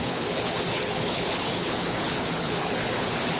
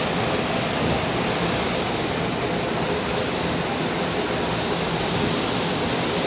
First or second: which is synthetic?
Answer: first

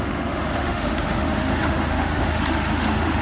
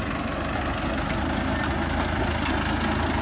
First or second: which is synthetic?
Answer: first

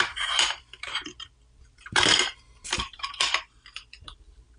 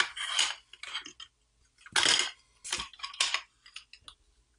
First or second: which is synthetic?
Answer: first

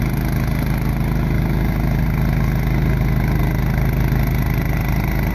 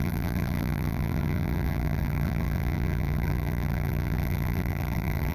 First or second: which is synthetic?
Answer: second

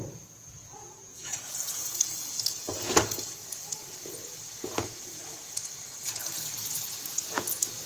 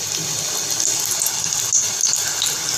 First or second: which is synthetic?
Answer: first